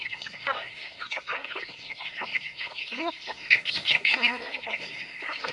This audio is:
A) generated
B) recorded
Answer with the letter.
A